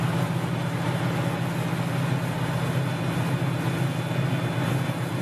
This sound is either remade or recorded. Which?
recorded